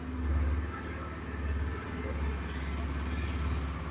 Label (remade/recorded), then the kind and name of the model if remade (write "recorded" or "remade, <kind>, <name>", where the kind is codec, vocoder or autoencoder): recorded